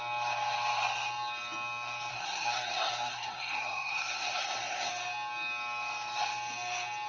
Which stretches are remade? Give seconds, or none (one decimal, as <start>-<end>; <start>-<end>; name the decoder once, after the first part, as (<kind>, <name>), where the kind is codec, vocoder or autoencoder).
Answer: 2.1-4.9 (codec, SNAC)